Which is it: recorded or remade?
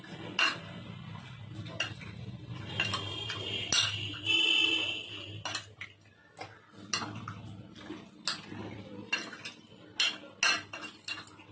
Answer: recorded